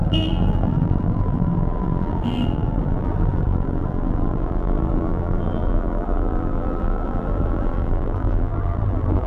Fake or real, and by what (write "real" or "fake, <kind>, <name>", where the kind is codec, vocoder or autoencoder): fake, vocoder, BigVGAN v2